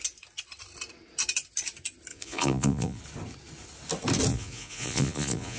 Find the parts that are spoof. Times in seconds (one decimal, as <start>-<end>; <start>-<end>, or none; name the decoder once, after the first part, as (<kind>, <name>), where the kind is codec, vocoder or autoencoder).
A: 2.1-3.0 (vocoder, Vocos); 4.3-5.6